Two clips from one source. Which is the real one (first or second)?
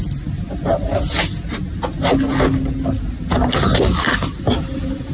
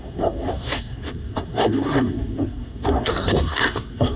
first